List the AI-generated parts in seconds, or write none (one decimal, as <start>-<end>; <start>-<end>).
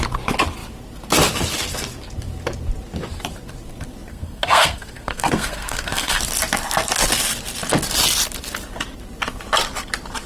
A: 4.1-6.2